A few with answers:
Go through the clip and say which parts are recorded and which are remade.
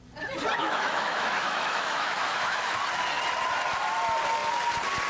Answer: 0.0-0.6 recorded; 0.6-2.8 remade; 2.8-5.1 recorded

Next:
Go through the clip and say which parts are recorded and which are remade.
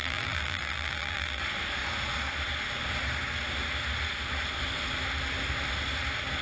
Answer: 0.0-1.4 remade; 1.4-6.4 recorded